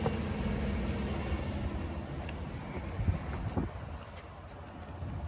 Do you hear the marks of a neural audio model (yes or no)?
no